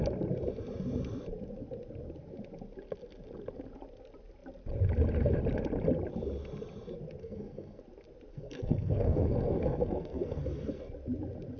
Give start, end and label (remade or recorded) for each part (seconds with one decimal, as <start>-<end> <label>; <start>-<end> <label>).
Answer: 0.0-7.2 recorded; 7.2-7.8 remade; 7.8-8.3 recorded; 8.3-10.8 remade; 10.8-11.6 recorded